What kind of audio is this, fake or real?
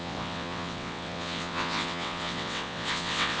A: fake